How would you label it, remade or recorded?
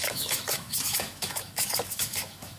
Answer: remade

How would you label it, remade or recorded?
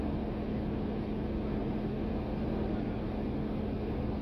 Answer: recorded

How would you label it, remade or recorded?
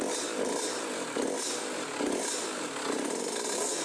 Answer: recorded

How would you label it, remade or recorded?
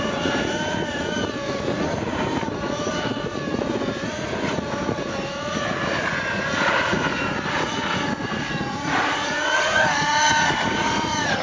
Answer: remade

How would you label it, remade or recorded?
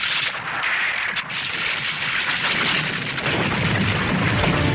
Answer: recorded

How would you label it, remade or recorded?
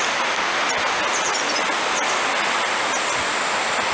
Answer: recorded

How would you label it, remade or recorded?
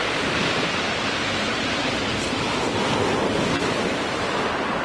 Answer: recorded